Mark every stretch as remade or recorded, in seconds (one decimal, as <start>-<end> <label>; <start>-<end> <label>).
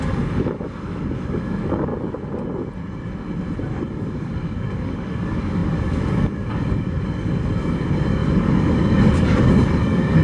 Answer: 0.0-1.9 remade; 1.9-3.7 recorded; 3.7-10.2 remade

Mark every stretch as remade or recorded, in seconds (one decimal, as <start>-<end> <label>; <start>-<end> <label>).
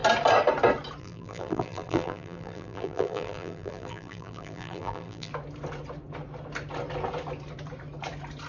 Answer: 0.0-1.0 recorded; 1.0-5.3 remade; 5.3-8.5 recorded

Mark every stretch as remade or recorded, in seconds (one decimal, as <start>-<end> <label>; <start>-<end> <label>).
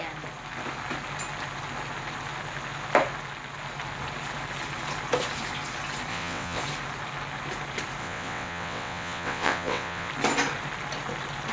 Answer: 0.0-6.1 recorded; 6.1-6.6 remade; 6.6-8.0 recorded; 8.0-10.1 remade; 10.1-11.5 recorded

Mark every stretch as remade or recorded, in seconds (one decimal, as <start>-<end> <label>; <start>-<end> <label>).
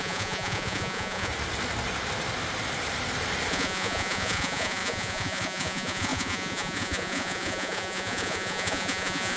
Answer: 0.0-1.3 remade; 1.3-3.5 recorded; 3.5-9.4 remade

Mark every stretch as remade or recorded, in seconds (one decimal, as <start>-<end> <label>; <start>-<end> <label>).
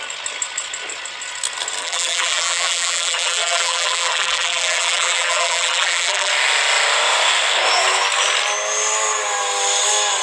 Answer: 0.0-1.8 recorded; 1.8-6.3 remade; 6.3-10.2 recorded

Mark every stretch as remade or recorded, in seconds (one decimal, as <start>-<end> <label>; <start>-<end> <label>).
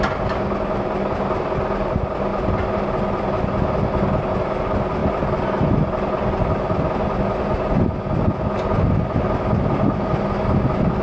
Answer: 0.0-11.0 recorded